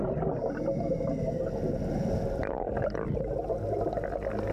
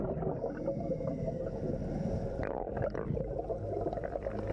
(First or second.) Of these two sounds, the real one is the first